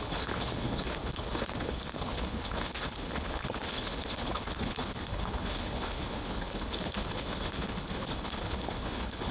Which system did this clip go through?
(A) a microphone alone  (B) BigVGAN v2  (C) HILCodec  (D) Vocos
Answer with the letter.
C